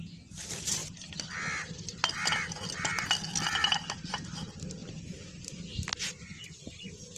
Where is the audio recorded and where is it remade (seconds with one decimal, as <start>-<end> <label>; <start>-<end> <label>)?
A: 0.0-7.2 recorded